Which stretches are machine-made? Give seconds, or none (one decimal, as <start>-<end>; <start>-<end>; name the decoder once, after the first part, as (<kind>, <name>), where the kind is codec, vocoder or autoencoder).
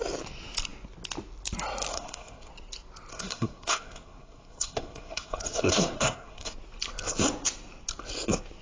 1.9-2.5 (codec, SNAC); 3.1-6.5